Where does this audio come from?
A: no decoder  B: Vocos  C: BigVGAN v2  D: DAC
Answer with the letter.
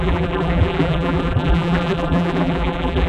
C